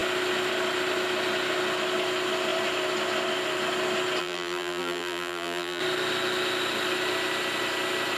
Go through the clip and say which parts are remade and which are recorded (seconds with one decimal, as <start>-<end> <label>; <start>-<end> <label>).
0.0-4.2 recorded; 4.2-5.8 remade; 5.8-8.2 recorded